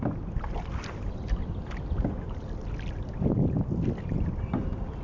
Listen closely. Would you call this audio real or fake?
real